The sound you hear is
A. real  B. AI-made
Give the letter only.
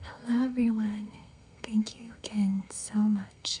B